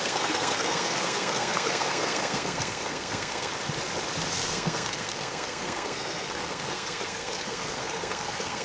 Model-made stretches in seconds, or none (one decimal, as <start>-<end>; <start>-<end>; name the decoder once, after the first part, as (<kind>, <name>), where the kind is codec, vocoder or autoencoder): 0.0-3.5 (codec, SNAC); 4.3-8.6